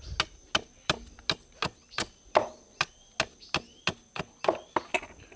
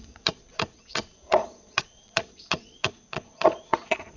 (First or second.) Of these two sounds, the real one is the first